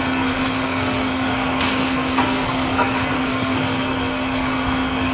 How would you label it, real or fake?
fake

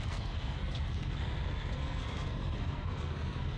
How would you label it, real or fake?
fake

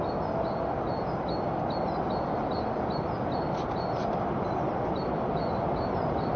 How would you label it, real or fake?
real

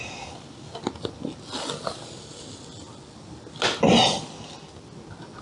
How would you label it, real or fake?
real